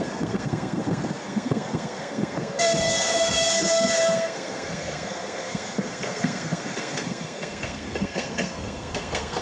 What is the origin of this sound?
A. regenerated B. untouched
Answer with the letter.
A